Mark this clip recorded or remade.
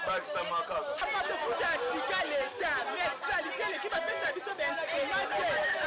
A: recorded